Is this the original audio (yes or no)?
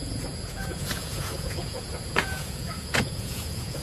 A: no